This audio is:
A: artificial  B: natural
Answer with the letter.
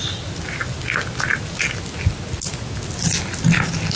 B